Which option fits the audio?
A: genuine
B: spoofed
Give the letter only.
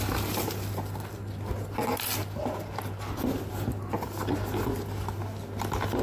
A